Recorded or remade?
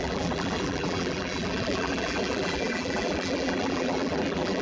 remade